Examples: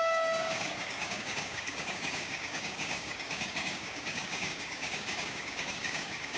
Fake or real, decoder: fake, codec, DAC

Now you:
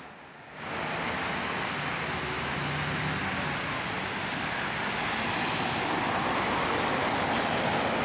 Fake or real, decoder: real